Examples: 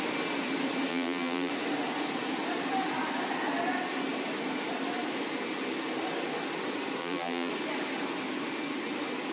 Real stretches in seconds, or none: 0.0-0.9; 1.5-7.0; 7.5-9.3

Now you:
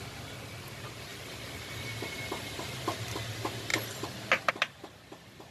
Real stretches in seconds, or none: 0.0-5.5

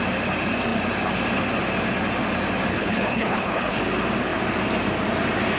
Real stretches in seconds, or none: 0.0-2.7; 3.8-5.6

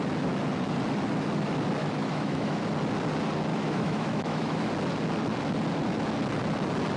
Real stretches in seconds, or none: 0.0-1.8; 2.6-3.5; 4.7-7.0